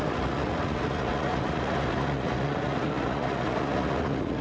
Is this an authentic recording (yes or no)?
no